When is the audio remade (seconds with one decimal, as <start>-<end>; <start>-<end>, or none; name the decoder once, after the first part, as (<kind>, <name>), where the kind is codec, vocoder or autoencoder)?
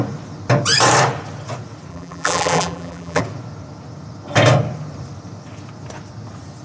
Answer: 1.9-3.2 (vocoder, BigVGAN v2)